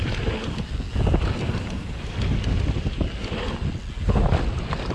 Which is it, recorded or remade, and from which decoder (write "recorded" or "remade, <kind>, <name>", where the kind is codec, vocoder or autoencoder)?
recorded